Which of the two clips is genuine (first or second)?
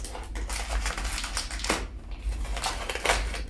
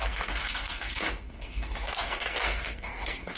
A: first